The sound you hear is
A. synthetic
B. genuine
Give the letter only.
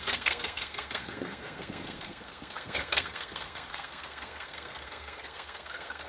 A